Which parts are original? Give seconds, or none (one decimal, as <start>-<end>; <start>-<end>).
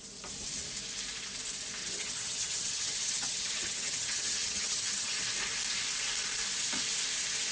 0.0-1.8; 5.2-7.5